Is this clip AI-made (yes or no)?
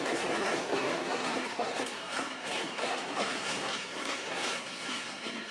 yes